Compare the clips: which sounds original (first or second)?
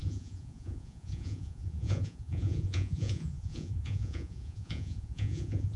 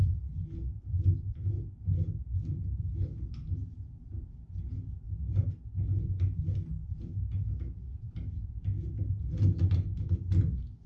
second